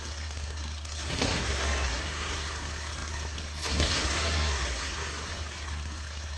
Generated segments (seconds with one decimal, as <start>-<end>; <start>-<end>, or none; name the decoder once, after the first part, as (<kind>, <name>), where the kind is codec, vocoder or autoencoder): 0.0-6.4 (codec, SNAC)